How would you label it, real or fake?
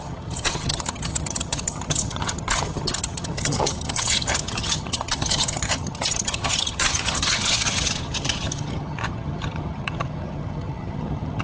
fake